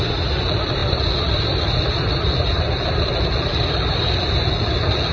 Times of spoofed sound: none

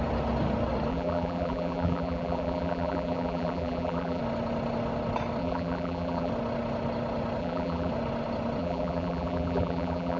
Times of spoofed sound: 0.9-4.2 (vocoder, BigVGAN v2); 5.4-6.3; 7.4-7.9; 8.6-10.2

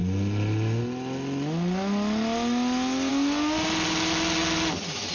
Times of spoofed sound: none

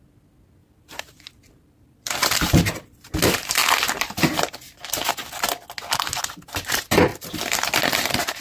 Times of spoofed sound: 0.6-3.1 (vocoder, BigVGAN v2); 3.6-5.1; 7.1-8.4